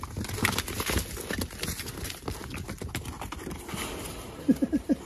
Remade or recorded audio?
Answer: recorded